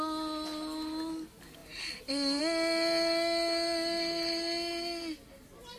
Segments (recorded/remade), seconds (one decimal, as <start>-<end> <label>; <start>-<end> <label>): 0.0-5.8 recorded